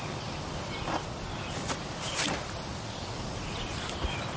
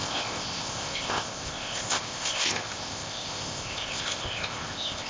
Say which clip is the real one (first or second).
first